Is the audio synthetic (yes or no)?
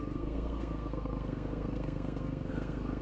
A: yes